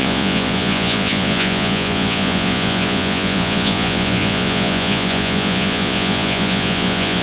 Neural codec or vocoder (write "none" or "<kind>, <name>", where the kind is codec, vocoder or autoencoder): vocoder, Vocos